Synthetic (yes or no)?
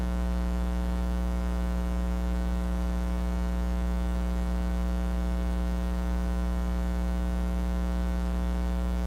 yes